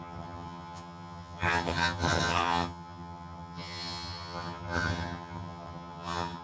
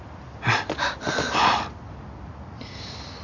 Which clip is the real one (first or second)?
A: second